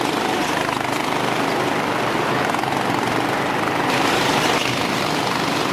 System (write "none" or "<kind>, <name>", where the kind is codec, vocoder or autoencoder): none